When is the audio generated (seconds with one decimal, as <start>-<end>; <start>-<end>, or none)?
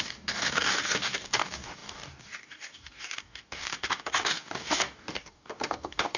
0.0-6.2